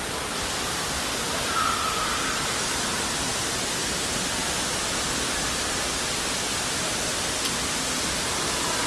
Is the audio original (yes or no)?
yes